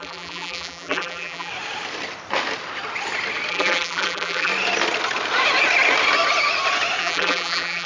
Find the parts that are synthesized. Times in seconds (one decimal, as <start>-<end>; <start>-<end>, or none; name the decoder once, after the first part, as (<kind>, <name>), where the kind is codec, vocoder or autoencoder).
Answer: 0.0-1.5 (vocoder, BigVGAN v2); 3.5-4.5; 7.0-7.9

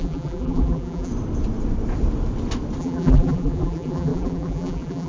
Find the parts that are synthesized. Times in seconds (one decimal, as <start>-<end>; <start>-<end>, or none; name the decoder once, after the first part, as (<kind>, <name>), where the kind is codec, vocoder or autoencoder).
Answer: 0.0-1.1 (vocoder, BigVGAN v2); 2.8-5.1

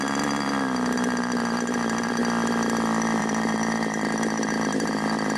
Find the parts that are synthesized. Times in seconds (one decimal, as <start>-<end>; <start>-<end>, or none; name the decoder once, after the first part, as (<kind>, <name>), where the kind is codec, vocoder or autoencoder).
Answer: 0.0-2.2 (vocoder, BigVGAN v2); 3.2-5.4

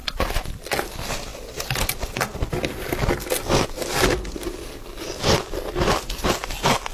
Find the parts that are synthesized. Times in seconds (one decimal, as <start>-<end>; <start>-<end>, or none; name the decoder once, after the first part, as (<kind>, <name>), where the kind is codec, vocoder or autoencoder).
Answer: 0.0-0.9 (vocoder, BigVGAN v2)

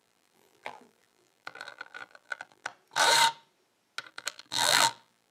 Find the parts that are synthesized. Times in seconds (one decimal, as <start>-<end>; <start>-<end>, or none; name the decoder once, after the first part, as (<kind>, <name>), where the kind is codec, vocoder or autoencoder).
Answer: 0.0-2.7 (vocoder, BigVGAN v2); 4.1-5.3

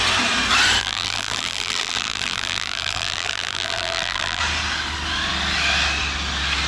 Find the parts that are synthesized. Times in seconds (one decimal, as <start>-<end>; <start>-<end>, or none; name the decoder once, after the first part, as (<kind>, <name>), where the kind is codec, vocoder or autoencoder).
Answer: 0.8-4.4 (vocoder, BigVGAN v2)

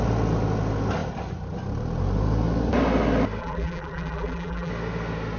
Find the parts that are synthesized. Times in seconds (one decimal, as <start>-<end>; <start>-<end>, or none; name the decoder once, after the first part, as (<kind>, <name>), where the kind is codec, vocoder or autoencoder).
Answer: 3.4-4.7 (vocoder, BigVGAN v2)

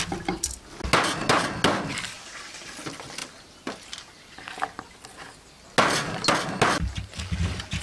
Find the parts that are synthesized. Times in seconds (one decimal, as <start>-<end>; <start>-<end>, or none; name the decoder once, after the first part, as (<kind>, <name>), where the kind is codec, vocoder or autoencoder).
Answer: none